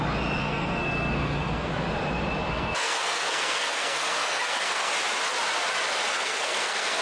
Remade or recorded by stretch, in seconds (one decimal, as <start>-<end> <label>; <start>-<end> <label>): 0.0-0.4 recorded; 0.4-1.7 remade; 1.7-2.5 recorded; 2.5-4.9 remade; 4.9-6.1 recorded; 6.1-7.0 remade

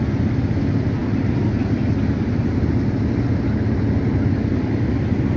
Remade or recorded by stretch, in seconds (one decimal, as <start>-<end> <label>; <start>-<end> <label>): 0.0-5.4 recorded

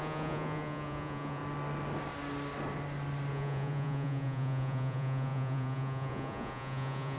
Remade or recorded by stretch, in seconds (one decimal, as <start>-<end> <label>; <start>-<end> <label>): 0.0-1.4 remade; 1.4-3.3 recorded; 3.3-7.2 remade

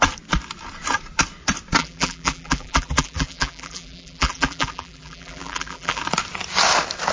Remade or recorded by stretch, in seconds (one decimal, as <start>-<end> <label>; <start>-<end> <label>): 0.0-1.8 recorded; 1.8-6.0 remade; 6.0-7.1 recorded